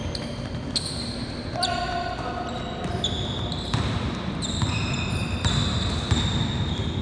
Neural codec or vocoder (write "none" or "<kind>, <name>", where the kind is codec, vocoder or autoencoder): none